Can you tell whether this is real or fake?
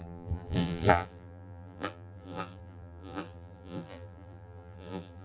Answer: fake